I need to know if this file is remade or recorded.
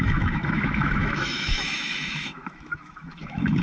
remade